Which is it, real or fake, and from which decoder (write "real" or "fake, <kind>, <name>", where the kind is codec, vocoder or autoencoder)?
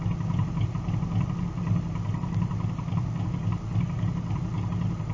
real